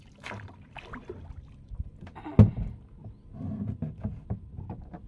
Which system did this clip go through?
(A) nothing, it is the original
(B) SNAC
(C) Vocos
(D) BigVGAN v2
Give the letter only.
A